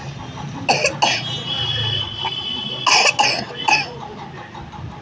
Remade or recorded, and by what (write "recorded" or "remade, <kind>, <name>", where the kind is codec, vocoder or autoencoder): recorded